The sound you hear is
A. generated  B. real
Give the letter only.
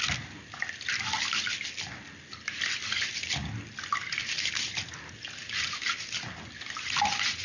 B